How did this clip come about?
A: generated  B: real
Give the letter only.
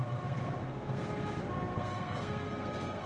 A